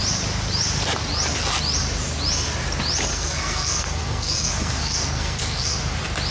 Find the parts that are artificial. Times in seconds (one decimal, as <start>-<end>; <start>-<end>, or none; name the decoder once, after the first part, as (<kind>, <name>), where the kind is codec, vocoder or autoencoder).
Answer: 3.1-5.8 (codec, SNAC)

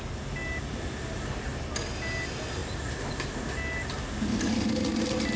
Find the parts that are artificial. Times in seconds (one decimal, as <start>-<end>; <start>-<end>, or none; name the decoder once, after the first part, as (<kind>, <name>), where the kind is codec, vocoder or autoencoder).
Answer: none

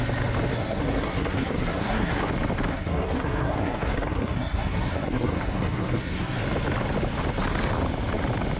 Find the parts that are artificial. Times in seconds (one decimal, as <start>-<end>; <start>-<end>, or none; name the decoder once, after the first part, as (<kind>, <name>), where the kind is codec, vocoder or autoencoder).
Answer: 0.5-2.3 (codec, SNAC); 2.7-6.4

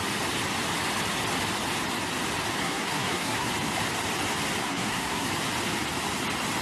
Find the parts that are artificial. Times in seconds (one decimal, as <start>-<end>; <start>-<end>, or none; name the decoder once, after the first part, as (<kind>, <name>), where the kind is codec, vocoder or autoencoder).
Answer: 2.6-3.5 (codec, SNAC); 4.6-5.3